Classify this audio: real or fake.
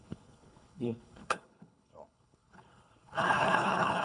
fake